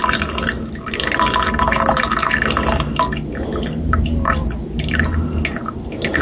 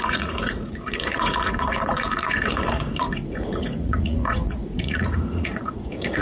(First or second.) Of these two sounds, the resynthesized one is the second